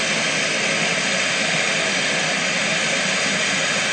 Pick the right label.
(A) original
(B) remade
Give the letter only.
A